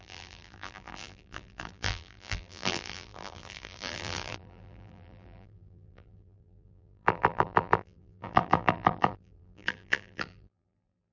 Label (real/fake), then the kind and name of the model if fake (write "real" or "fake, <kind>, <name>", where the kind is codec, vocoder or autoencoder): fake, vocoder, BigVGAN v2